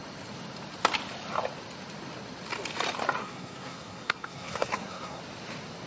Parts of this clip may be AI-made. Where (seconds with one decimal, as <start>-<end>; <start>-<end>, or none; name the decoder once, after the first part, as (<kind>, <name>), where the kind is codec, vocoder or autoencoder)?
3.2-5.2 (codec, SNAC)